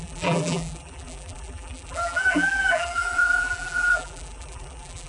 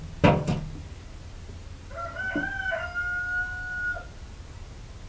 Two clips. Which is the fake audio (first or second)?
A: first